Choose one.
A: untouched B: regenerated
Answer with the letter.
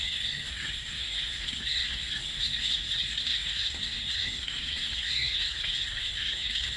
B